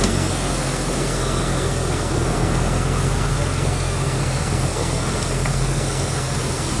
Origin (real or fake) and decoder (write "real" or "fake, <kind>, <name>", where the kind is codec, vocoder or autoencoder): fake, codec, SNAC